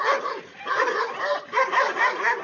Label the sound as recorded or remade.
recorded